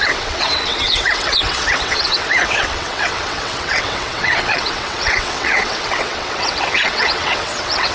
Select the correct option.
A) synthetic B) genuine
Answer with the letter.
A